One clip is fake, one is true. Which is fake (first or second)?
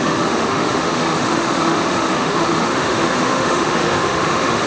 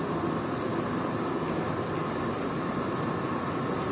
first